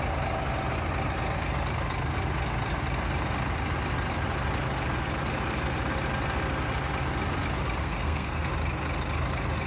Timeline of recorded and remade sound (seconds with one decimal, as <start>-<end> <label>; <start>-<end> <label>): 0.0-7.8 recorded; 7.8-8.5 remade; 8.5-9.7 recorded

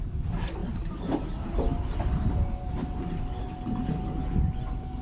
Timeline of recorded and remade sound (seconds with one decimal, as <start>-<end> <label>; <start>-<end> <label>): 0.0-5.0 recorded

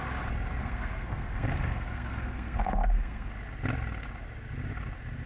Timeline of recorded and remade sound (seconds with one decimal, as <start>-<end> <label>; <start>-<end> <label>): 0.0-0.6 recorded; 0.6-3.3 remade; 3.3-5.3 recorded

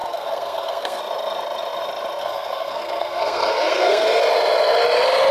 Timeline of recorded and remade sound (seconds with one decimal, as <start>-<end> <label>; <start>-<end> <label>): 0.0-1.0 remade; 1.0-2.2 recorded; 2.2-4.2 remade; 4.2-5.3 recorded

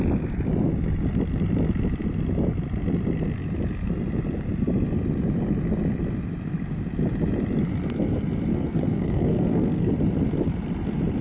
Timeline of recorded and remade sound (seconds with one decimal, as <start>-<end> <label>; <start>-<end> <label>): 0.0-8.5 recorded; 8.5-9.9 remade; 9.9-11.2 recorded

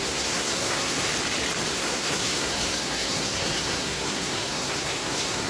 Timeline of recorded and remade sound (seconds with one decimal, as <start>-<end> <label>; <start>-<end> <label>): 0.0-1.1 remade; 1.1-1.7 recorded; 1.7-5.5 remade

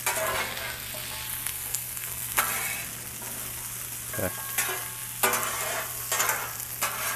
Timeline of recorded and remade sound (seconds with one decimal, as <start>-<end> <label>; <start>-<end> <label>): 0.0-1.5 recorded; 1.5-2.4 remade; 2.4-7.2 recorded